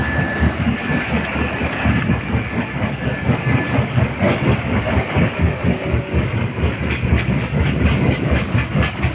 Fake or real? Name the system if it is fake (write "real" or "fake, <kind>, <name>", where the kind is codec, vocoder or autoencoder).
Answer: fake, codec, DAC